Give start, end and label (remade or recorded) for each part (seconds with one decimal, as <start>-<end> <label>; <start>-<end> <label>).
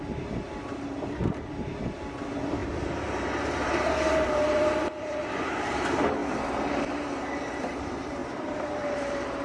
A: 0.0-6.2 remade; 6.2-6.8 recorded; 6.8-9.4 remade